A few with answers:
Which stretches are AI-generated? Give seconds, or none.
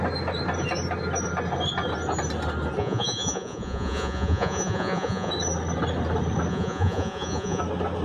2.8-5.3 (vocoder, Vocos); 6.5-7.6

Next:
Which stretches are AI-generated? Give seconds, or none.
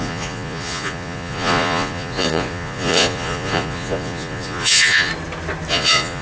0.0-5.1 (vocoder, Vocos); 5.7-6.2